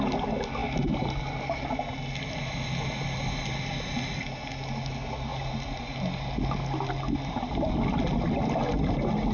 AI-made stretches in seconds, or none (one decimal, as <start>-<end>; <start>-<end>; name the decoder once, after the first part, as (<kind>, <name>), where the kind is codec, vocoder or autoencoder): none